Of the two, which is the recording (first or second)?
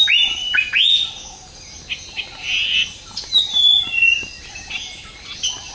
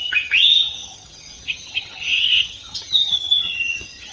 first